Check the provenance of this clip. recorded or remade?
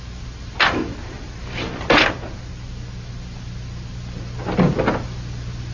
recorded